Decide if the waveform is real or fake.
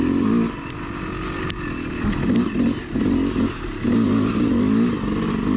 real